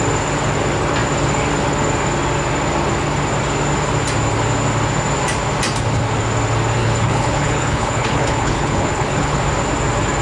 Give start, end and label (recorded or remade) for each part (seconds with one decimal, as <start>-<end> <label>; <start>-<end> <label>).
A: 0.0-6.8 recorded; 6.8-9.4 remade; 9.4-10.2 recorded